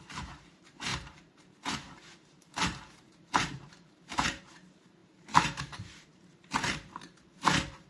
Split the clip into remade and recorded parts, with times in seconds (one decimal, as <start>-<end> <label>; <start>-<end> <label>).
0.0-7.9 remade